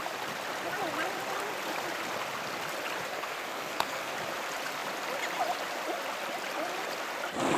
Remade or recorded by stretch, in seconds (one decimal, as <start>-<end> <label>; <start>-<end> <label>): 0.0-3.1 recorded; 3.1-4.1 remade; 4.1-7.6 recorded